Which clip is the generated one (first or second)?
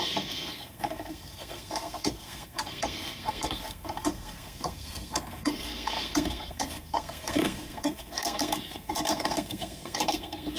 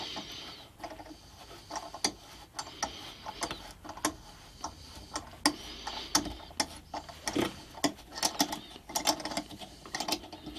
first